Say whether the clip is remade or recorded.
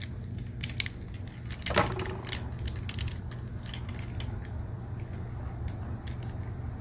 recorded